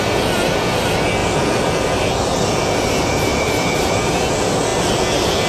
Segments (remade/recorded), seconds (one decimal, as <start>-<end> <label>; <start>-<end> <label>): 0.0-5.5 recorded